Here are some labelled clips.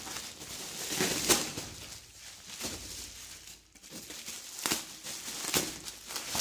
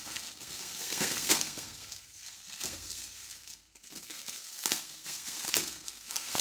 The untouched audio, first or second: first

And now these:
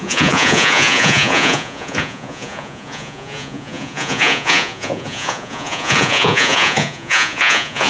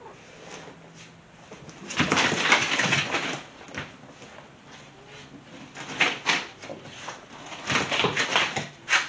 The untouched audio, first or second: second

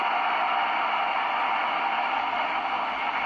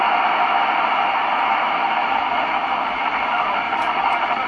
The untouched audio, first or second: first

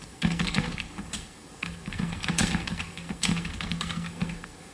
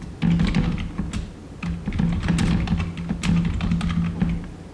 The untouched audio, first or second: second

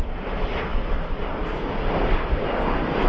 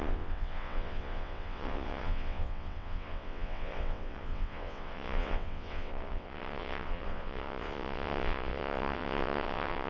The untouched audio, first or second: first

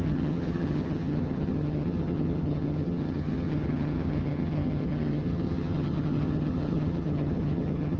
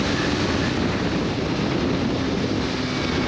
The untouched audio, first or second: second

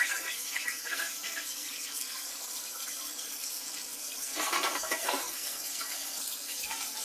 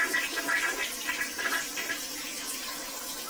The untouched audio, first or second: second